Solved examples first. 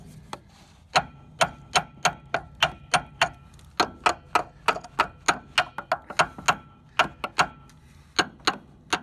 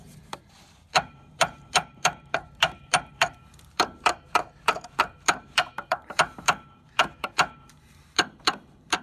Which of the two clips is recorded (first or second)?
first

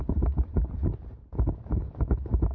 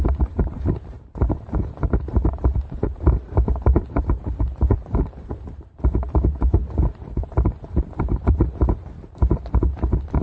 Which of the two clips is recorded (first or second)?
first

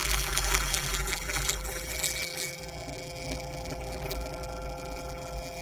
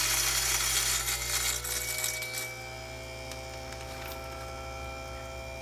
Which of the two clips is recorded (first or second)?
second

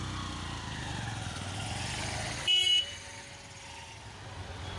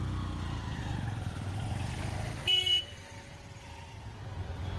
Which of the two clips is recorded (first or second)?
first